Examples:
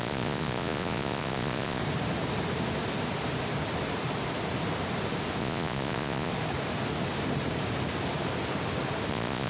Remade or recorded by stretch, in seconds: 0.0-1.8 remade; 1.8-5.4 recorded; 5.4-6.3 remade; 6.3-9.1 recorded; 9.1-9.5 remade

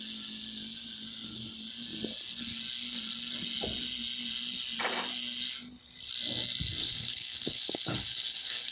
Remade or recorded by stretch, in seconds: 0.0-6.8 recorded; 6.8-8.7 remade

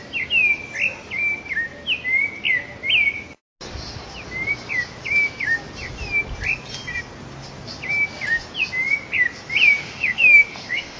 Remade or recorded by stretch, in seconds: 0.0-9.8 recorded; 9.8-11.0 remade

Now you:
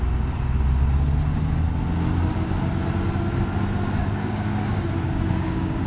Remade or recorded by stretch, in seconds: 0.0-4.0 recorded; 4.0-5.9 remade